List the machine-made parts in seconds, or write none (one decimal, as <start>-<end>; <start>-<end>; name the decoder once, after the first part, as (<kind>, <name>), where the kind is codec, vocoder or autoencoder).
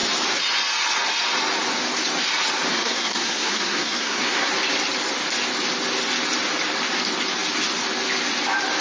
2.7-4.5 (codec, SNAC)